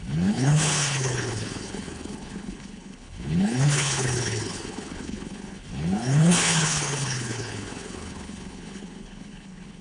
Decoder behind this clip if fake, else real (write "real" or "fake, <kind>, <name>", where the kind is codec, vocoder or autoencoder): fake, codec, HILCodec